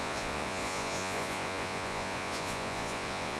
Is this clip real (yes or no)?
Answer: no